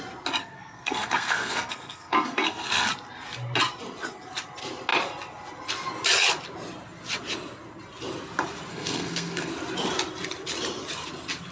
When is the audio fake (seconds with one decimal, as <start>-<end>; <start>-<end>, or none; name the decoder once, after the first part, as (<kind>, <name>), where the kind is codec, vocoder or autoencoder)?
0.4-2.9 (codec, SNAC); 8.7-9.5